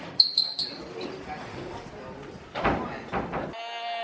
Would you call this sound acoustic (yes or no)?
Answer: yes